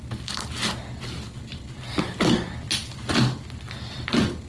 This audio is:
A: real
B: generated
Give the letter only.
A